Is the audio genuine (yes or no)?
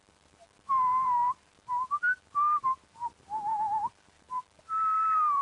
no